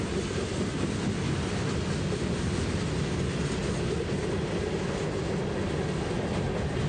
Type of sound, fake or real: real